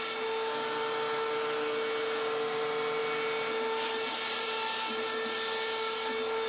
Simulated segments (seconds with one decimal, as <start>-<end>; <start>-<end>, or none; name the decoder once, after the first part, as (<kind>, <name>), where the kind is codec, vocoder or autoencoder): none